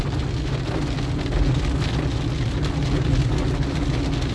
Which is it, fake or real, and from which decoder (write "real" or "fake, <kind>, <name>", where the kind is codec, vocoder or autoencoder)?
real